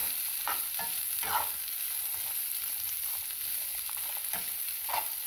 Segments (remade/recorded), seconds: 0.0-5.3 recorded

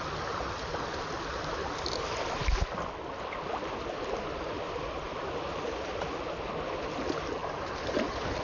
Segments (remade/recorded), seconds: 0.0-7.4 recorded; 7.4-8.4 remade

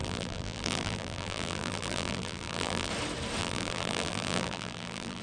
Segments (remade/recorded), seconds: 0.0-2.9 remade; 2.9-3.4 recorded; 3.4-5.2 remade

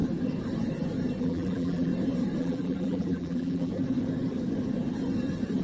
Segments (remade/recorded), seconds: 0.0-1.2 recorded; 1.2-1.9 remade; 1.9-2.4 recorded; 2.4-3.7 remade; 3.7-5.6 recorded

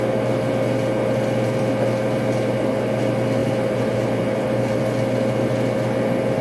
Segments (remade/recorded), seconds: 0.0-3.4 recorded; 3.4-4.8 remade; 4.8-6.4 recorded

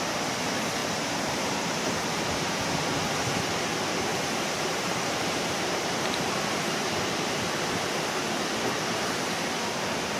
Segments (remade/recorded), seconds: 0.0-0.8 recorded; 0.8-2.5 remade; 2.5-4.1 recorded; 4.1-6.9 remade; 6.9-10.2 recorded

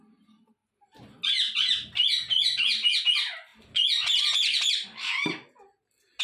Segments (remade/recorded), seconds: 0.0-6.2 recorded